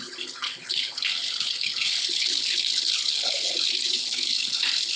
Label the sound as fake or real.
fake